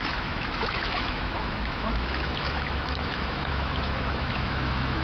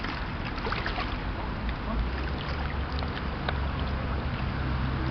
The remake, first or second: first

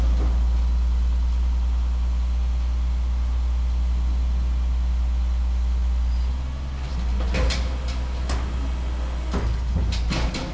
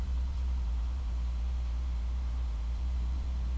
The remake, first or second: second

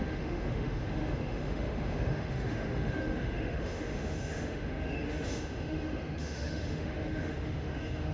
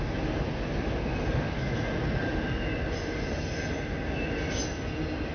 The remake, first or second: first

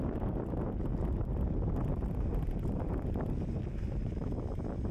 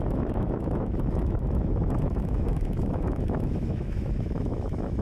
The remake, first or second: second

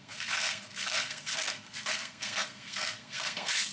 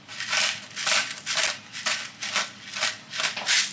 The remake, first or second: first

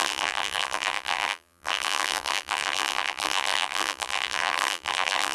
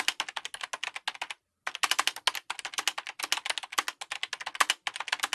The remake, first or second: first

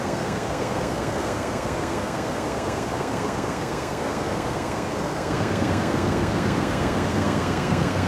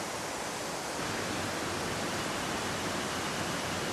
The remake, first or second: first